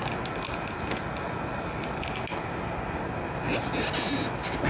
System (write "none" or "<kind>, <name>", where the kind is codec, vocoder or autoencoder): none